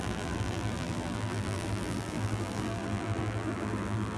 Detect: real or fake fake